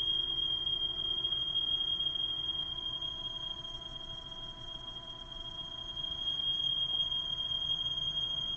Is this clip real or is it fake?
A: fake